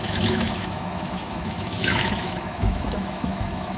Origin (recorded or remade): remade